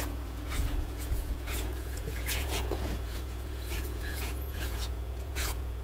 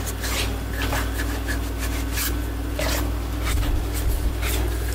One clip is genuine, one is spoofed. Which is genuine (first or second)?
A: second